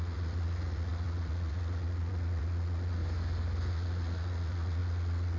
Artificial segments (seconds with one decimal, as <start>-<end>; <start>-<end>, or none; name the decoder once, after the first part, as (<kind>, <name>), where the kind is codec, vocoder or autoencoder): 0.0-3.0 (vocoder, Vocos); 3.7-5.4